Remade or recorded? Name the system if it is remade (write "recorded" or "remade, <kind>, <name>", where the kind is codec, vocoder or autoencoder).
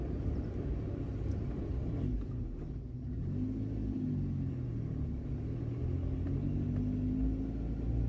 recorded